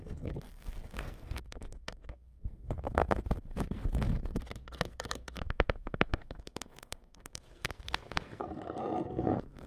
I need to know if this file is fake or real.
fake